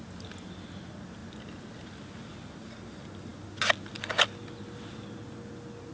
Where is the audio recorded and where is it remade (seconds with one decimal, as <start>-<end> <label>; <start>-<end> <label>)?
0.0-5.9 recorded